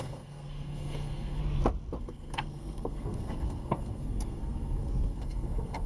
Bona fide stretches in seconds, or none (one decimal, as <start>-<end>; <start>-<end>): 1.4-2.0